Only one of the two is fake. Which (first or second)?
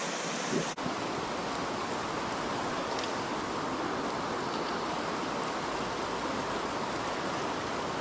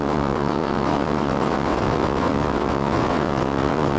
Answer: second